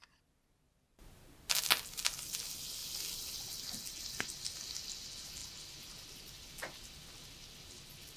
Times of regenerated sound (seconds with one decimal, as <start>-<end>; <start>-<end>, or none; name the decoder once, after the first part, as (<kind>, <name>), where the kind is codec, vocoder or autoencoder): none